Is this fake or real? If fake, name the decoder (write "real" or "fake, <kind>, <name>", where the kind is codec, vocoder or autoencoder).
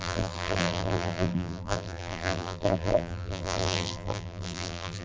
fake, vocoder, BigVGAN v2